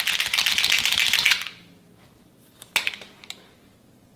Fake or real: real